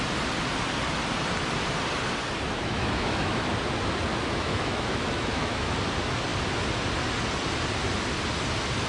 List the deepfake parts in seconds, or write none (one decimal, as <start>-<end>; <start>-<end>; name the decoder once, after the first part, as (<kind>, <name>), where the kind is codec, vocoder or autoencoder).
2.5-3.5 (autoencoder, DAC-VAE); 4.1-5.7